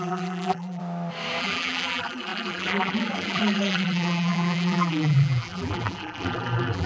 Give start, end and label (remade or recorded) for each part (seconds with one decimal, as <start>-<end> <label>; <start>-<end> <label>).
0.0-0.8 remade; 0.8-1.4 recorded; 1.4-6.9 remade